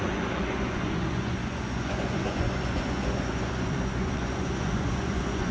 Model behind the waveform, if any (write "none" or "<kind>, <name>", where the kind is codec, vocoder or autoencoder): vocoder, Vocos